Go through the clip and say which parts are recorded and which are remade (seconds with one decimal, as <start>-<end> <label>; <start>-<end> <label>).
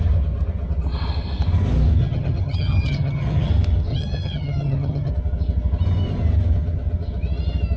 0.0-2.0 recorded; 2.0-3.5 remade; 3.5-3.9 recorded; 3.9-5.1 remade; 5.1-7.8 recorded